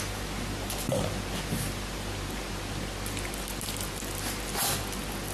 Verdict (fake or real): real